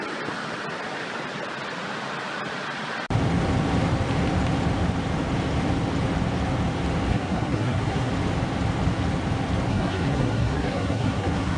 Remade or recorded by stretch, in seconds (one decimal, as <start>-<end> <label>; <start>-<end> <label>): 0.0-7.1 recorded; 7.1-8.1 remade; 8.1-9.7 recorded; 9.7-11.6 remade